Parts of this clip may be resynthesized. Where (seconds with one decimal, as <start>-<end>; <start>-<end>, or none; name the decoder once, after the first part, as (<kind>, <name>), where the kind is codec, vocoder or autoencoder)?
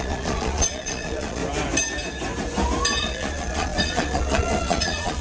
0.0-1.4 (vocoder, Vocos); 3.0-5.2